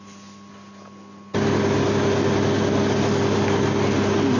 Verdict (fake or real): real